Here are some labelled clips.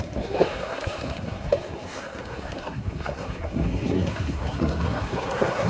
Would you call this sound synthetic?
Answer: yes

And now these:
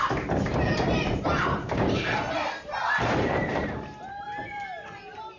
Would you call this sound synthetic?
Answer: yes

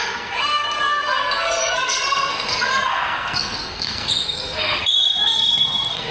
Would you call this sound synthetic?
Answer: yes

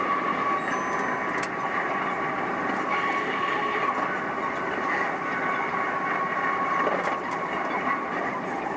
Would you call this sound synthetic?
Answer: no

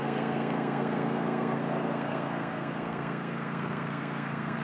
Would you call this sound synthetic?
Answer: yes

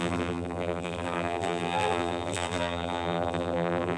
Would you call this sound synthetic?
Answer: yes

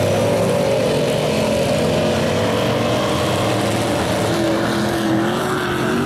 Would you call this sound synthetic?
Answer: no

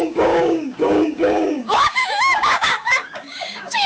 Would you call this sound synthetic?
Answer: yes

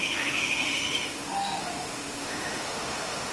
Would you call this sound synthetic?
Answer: yes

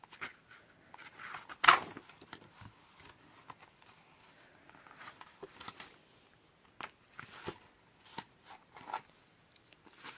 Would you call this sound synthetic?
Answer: no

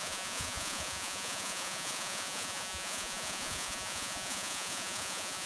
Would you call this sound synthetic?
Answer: yes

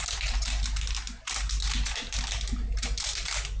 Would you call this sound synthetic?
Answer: no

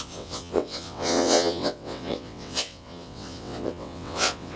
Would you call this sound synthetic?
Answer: yes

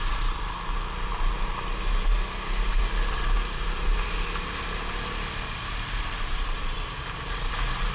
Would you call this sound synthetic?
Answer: no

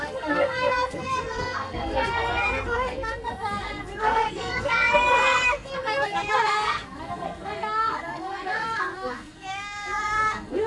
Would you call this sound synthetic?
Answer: yes